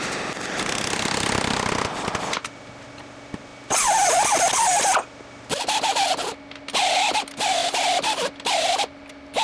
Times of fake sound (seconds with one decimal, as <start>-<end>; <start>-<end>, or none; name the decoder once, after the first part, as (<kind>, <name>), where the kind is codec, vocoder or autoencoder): none